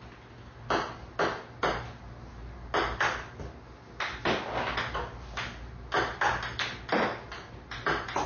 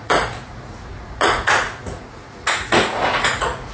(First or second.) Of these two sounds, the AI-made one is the second